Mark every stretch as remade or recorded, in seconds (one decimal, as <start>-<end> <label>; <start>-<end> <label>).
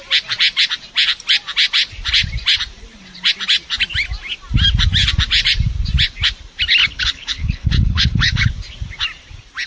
0.0-6.8 recorded; 6.8-8.5 remade; 8.5-9.7 recorded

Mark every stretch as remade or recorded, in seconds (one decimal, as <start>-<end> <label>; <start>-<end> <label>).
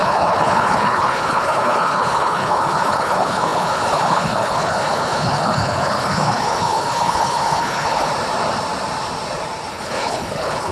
0.0-8.1 remade; 8.1-9.7 recorded; 9.7-10.7 remade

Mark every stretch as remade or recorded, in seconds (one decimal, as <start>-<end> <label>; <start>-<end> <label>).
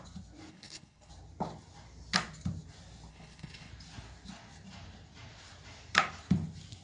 0.0-0.5 recorded; 0.5-1.1 remade; 1.1-3.1 recorded; 3.1-3.7 remade; 3.7-6.8 recorded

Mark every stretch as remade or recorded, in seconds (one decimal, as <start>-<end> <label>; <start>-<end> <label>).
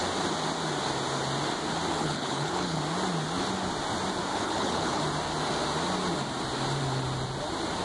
0.0-2.0 recorded; 2.0-2.8 remade; 2.8-4.3 recorded; 4.3-5.0 remade; 5.0-7.8 recorded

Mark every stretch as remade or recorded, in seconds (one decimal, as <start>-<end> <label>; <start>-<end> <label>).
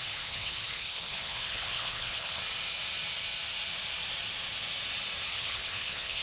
0.0-2.4 remade; 2.4-5.3 recorded; 5.3-6.2 remade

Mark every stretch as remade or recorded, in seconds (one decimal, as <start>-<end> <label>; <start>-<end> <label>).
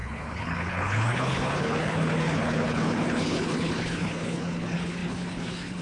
0.0-5.8 remade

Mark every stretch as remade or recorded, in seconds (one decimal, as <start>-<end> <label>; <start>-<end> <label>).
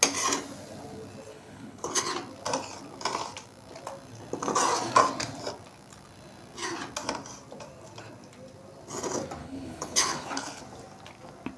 0.0-1.3 recorded; 1.3-2.1 remade; 2.1-9.4 recorded; 9.4-10.6 remade; 10.6-11.6 recorded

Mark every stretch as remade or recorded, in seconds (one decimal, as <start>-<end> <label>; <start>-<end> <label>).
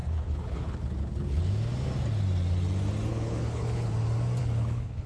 0.0-1.4 remade; 1.4-3.1 recorded; 3.1-3.9 remade; 3.9-4.4 recorded; 4.4-5.1 remade